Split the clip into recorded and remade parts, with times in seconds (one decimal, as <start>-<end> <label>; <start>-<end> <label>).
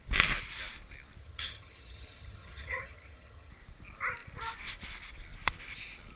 0.0-1.2 recorded; 1.2-3.5 remade; 3.5-6.2 recorded